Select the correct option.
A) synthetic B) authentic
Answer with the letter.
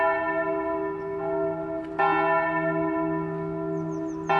B